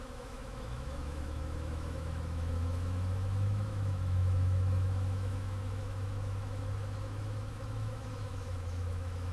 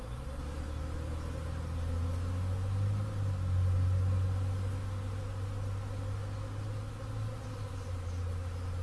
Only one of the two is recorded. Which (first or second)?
second